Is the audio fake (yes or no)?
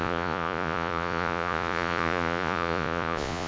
yes